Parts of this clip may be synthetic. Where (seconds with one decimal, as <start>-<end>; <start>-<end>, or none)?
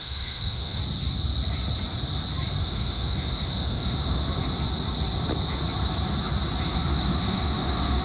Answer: 0.0-0.8; 2.6-4.2; 6.7-8.0